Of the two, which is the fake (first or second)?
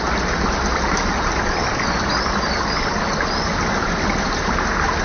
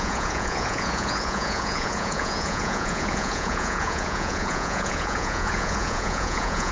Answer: second